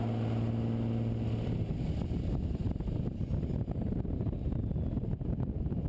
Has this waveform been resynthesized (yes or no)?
no